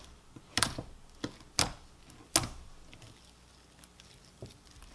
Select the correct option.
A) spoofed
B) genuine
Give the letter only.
B